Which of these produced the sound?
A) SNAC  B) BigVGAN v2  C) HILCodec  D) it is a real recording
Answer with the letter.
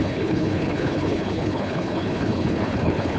C